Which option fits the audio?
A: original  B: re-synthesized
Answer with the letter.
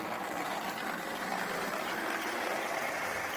A